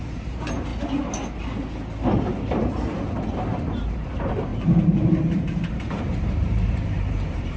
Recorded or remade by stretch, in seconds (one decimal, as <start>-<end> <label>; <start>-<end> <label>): 0.0-0.7 remade; 0.7-2.7 recorded; 2.7-7.6 remade